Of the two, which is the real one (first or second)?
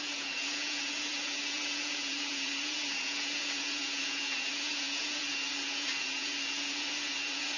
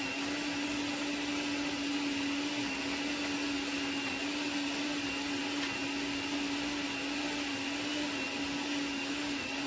second